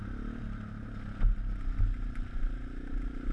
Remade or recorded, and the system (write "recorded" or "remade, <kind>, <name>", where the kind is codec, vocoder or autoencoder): recorded